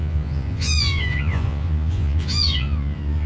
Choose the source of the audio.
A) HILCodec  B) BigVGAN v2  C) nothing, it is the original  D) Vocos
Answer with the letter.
D